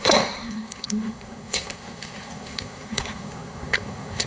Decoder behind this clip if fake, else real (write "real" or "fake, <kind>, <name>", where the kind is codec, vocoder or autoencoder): fake, codec, SNAC